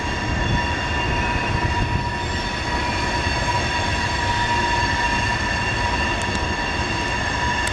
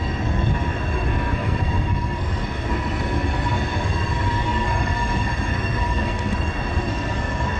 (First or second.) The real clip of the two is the first